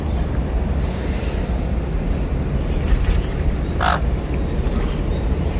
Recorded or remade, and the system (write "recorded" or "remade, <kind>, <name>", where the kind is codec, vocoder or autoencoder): recorded